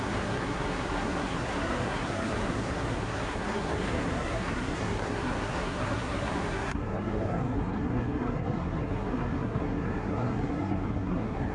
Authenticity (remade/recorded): remade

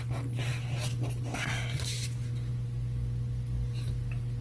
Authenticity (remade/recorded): recorded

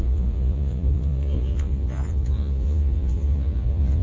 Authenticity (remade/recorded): remade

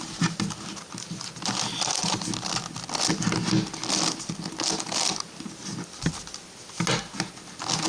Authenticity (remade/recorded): recorded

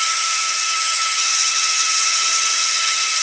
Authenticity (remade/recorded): remade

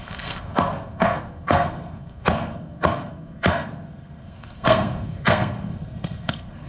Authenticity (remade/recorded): remade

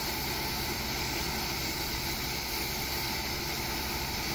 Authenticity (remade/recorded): recorded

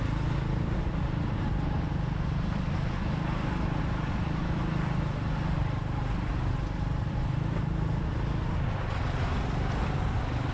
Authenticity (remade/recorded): recorded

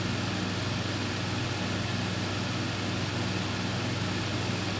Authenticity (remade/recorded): recorded